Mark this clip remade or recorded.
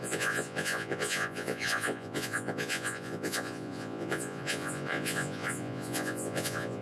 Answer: remade